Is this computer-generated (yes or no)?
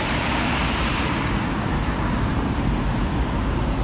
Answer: yes